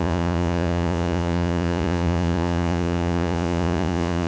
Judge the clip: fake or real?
fake